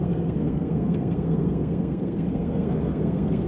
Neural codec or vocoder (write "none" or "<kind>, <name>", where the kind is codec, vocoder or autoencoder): codec, SNAC